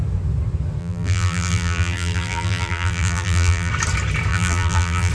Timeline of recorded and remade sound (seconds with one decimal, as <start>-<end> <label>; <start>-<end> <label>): 0.0-0.8 recorded; 0.8-3.7 remade; 3.7-4.3 recorded; 4.3-5.1 remade

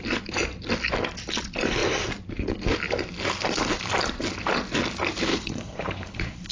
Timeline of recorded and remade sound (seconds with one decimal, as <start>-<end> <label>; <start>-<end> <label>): 0.0-5.3 recorded; 5.3-6.5 remade

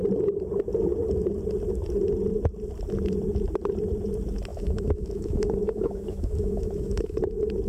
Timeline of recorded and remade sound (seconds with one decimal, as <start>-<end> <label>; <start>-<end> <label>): 0.0-4.5 recorded; 4.5-7.2 remade; 7.2-7.7 recorded

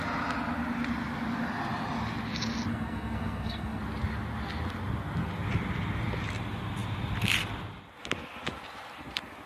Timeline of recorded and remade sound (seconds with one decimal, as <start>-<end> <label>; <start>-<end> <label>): 0.0-2.7 recorded; 2.7-3.8 remade; 3.8-9.5 recorded

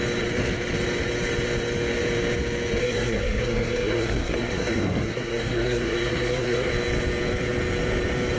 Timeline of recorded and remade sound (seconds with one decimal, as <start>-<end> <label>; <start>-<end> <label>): 0.0-2.8 recorded; 2.8-6.7 remade; 6.7-8.4 recorded

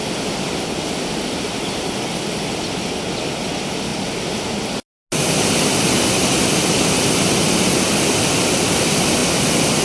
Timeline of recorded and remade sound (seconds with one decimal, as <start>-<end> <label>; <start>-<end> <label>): 0.0-9.8 recorded

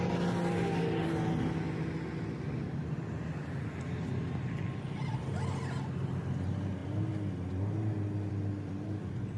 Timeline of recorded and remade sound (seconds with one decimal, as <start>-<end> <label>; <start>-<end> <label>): 0.0-9.4 recorded